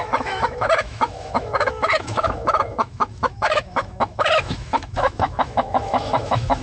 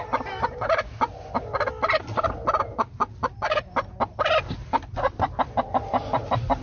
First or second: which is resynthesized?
first